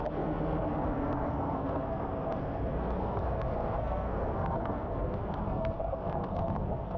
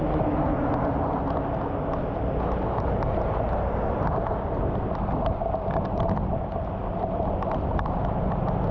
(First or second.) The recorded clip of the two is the second